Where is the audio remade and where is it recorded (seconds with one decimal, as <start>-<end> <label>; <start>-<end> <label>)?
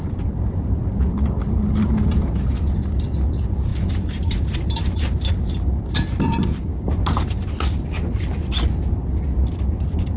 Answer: 0.0-10.2 recorded